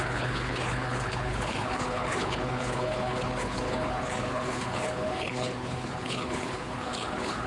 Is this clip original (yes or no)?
no